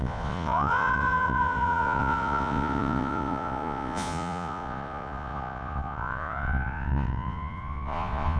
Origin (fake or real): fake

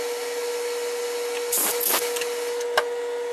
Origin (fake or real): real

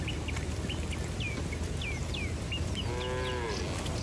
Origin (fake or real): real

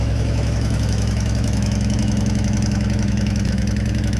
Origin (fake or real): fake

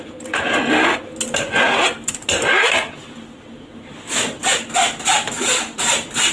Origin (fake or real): real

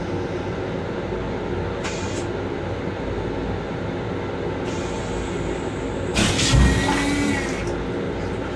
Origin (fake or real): real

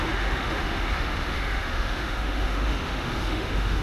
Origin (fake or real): fake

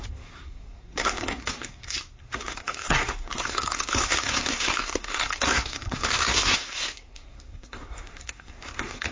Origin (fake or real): fake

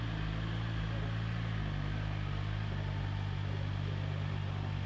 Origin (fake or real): real